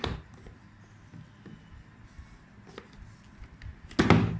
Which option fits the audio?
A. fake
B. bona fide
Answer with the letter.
B